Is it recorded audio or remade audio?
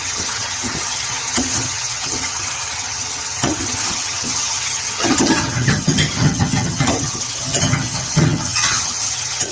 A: remade